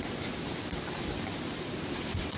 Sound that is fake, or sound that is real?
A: real